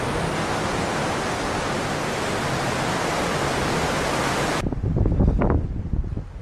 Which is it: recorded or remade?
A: recorded